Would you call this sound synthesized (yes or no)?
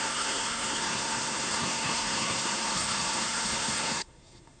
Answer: yes